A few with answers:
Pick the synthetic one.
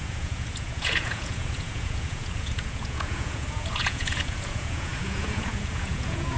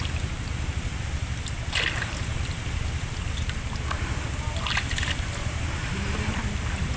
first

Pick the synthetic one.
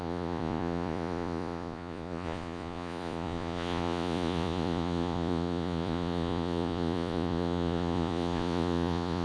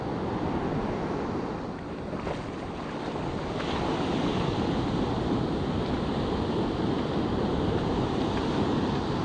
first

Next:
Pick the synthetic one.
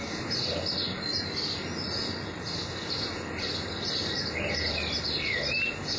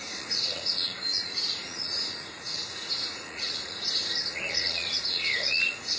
second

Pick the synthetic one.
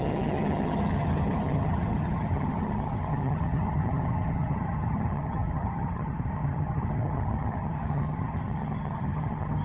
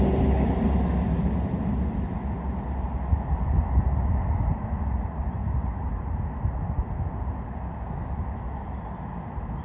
first